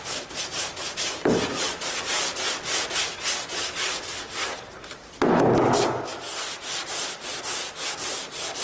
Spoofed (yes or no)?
no